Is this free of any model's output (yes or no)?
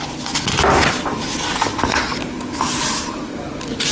yes